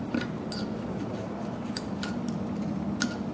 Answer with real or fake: real